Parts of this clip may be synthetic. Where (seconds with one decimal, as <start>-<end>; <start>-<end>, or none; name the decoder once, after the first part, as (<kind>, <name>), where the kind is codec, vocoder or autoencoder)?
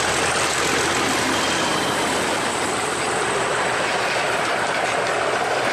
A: none